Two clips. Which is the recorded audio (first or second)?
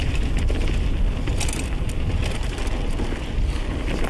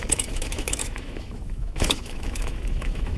first